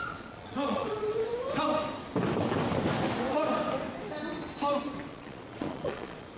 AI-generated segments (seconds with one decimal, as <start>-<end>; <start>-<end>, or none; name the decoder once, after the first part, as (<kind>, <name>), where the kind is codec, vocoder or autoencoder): 0.0-1.3 (vocoder, Vocos); 5.1-6.4